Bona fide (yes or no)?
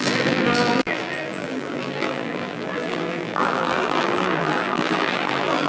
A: no